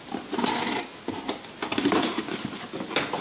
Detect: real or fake real